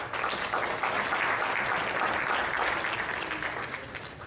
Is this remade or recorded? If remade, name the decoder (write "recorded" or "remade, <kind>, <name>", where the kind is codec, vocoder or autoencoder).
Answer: recorded